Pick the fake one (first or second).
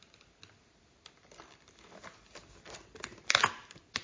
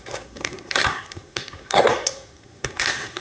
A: second